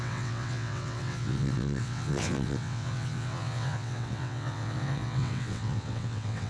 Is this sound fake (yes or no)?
yes